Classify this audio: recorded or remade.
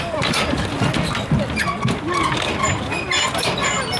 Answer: recorded